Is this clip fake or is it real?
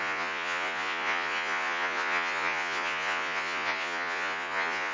fake